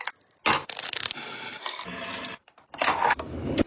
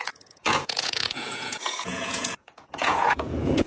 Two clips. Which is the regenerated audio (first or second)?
second